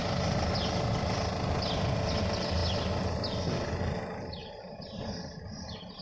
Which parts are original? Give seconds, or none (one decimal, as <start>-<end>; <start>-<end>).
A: 0.0-4.4; 5.4-6.0